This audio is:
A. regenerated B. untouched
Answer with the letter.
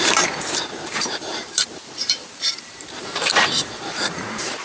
A